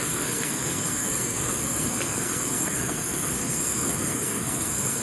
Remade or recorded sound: remade